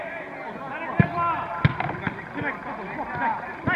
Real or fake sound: real